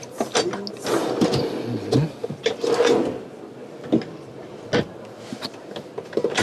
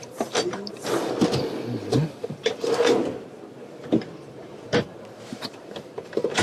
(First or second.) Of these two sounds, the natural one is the first